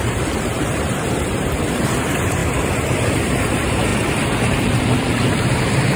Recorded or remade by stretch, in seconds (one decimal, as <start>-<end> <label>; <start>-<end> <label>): 0.0-2.4 remade; 2.4-3.1 recorded; 3.1-3.9 remade; 3.9-4.5 recorded; 4.5-6.0 remade